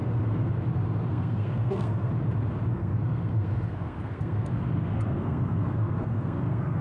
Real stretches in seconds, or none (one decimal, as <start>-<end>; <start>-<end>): 0.5-1.1; 2.1-2.7